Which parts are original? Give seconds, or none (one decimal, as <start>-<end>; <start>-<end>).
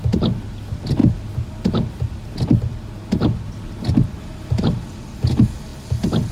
0.0-6.3